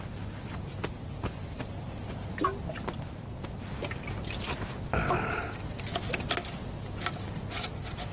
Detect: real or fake real